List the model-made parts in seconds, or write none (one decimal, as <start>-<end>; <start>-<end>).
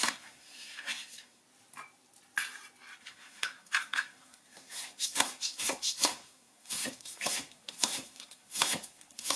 0.0-1.4; 3.0-9.4